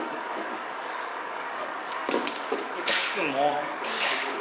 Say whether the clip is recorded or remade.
remade